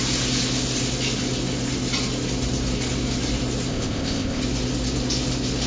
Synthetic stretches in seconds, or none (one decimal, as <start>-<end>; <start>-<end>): 3.7-4.4